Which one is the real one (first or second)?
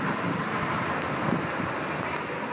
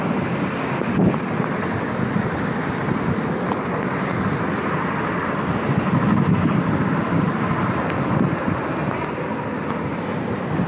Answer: first